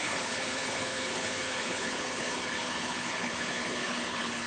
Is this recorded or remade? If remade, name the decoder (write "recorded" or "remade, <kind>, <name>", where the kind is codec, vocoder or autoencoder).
remade, codec, HILCodec